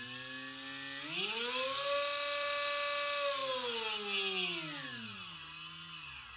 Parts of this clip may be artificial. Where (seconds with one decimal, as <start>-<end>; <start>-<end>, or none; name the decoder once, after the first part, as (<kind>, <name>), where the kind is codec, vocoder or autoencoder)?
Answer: none